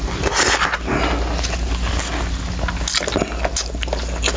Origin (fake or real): real